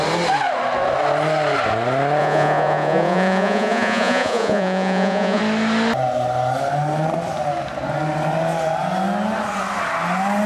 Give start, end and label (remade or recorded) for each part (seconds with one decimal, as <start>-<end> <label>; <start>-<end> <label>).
0.0-2.2 recorded; 2.2-5.4 remade; 5.4-10.5 recorded